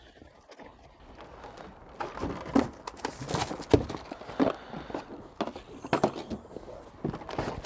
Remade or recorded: recorded